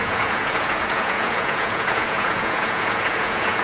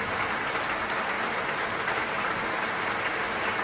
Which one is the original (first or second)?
second